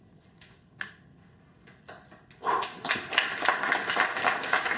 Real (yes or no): yes